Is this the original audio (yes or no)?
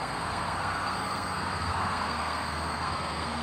no